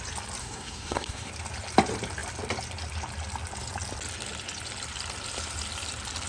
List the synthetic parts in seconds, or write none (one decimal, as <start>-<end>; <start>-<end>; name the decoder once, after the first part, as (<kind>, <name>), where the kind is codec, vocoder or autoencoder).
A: 0.4-1.3 (codec, SNAC)